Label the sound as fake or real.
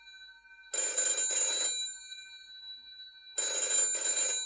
real